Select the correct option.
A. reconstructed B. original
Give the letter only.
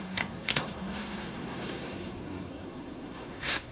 A